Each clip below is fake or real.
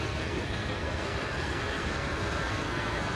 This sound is fake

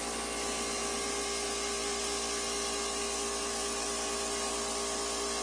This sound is real